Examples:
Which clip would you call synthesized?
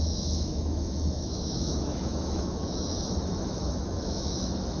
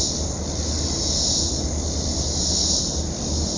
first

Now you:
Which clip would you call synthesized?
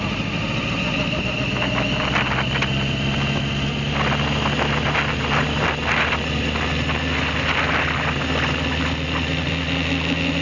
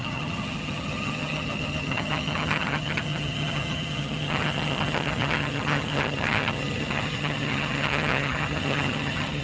second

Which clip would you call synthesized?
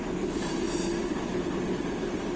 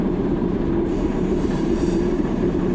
second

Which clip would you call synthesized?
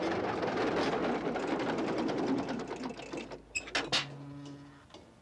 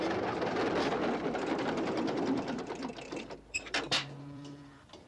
second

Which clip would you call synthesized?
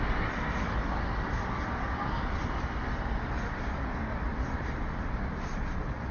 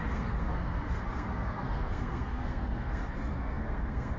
second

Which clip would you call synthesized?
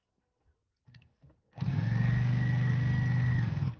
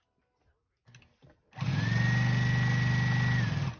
first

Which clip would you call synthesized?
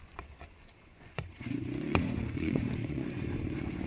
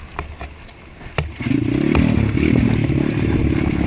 first